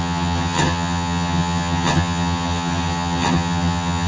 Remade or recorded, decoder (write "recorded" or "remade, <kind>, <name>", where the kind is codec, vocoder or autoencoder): remade, vocoder, HiFi-GAN